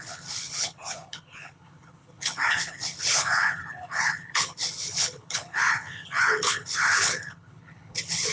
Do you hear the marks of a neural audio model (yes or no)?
yes